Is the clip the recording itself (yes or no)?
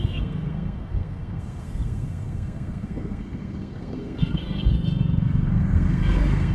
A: no